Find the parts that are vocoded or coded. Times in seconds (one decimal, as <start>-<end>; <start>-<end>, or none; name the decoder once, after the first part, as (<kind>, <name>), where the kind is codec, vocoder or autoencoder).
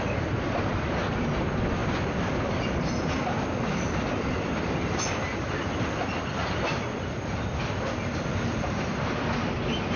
none